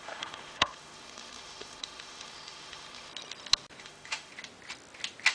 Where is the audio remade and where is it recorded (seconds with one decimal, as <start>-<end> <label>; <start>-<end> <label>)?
0.0-3.1 remade; 3.1-3.8 recorded; 3.8-4.3 remade; 4.3-5.3 recorded